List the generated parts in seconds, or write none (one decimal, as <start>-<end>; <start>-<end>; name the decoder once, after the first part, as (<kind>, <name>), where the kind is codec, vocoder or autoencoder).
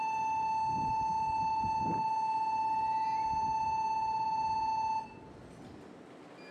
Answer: none